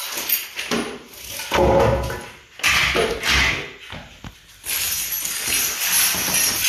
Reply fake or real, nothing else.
real